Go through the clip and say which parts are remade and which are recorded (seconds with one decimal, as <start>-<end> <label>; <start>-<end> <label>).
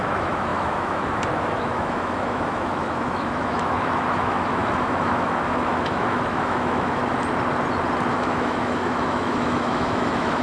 0.0-7.0 remade; 7.0-8.1 recorded; 8.1-10.4 remade